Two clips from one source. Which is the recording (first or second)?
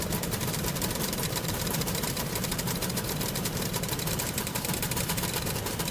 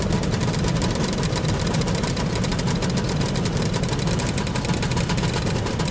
second